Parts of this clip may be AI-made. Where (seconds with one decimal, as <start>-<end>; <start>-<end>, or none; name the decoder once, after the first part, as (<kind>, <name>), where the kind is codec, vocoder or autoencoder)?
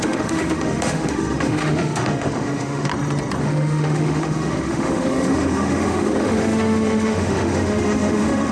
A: 0.0-2.9 (autoencoder, DAC-VAE); 3.4-8.5